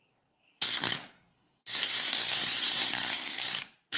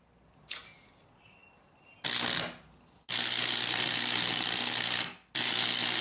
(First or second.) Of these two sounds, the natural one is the second